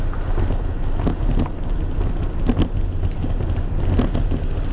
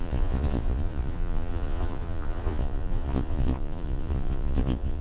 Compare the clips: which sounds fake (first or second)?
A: second